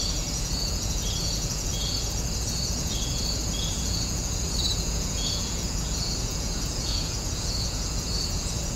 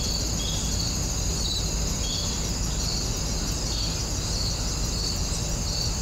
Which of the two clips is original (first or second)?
second